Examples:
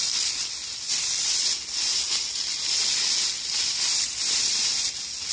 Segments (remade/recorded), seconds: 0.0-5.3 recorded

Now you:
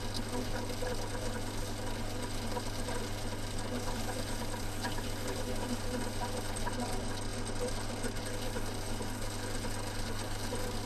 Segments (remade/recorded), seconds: 0.0-10.9 recorded

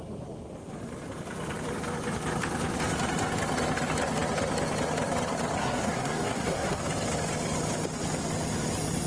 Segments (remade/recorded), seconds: 0.0-5.6 recorded; 5.6-6.8 remade; 6.8-9.1 recorded

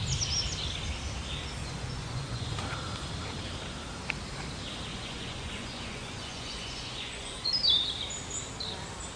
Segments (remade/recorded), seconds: 0.0-1.6 recorded; 1.6-2.5 remade; 2.5-4.9 recorded; 4.9-7.5 remade; 7.5-9.2 recorded

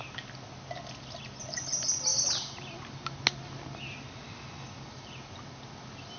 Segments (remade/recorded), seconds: 0.0-6.2 recorded

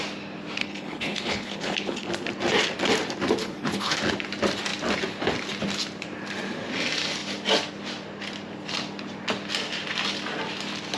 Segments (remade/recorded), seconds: 0.0-0.6 recorded; 0.6-2.1 remade; 2.1-3.4 recorded; 3.4-4.0 remade; 4.0-11.0 recorded